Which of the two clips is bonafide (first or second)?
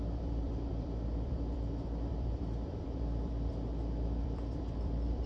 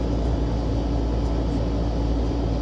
second